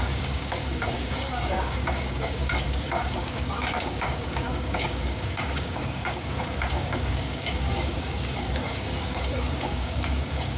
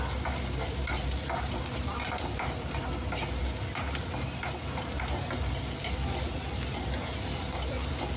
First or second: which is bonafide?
second